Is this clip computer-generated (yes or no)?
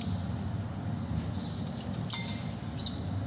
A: no